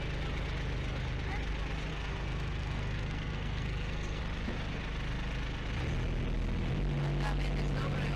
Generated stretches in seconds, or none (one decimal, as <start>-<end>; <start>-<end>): 1.9-4.2